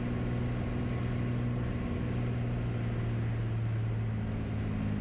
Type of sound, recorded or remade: recorded